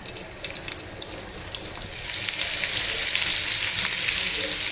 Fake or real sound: real